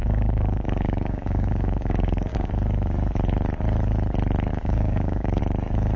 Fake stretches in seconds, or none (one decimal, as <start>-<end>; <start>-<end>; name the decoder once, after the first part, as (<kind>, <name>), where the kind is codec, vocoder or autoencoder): 0.0-2.5 (codec, DAC); 4.5-5.4